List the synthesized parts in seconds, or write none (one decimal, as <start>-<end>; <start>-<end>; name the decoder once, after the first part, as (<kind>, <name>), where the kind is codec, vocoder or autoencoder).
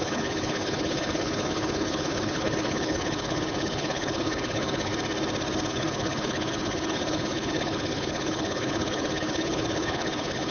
0.0-4.9 (codec, HILCodec); 5.7-10.5